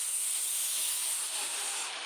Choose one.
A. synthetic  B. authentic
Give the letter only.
A